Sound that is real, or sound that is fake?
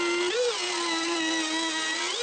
real